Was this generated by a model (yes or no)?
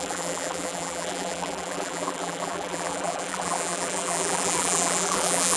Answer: yes